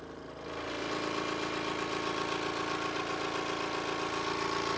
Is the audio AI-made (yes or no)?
no